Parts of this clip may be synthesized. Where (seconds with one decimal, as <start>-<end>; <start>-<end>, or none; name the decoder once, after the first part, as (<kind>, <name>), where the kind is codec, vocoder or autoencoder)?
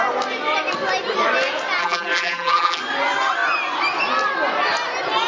1.8-2.8 (vocoder, BigVGAN v2)